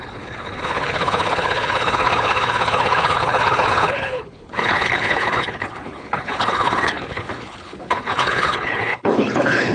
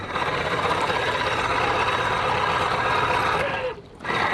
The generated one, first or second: first